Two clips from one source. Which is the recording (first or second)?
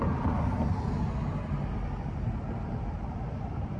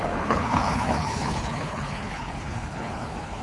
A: first